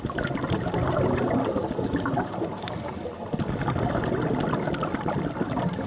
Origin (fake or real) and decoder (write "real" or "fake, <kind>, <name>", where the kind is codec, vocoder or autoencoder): real